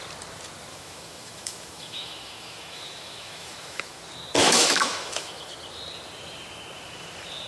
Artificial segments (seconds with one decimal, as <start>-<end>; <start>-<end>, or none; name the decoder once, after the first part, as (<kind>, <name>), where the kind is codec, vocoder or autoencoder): 0.7-4.0 (autoencoder, DAC-VAE); 4.4-5.5